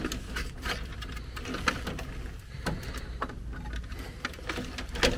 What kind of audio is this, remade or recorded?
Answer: recorded